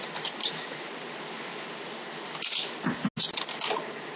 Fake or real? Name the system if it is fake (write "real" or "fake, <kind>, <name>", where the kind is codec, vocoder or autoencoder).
real